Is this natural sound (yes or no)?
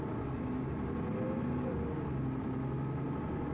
yes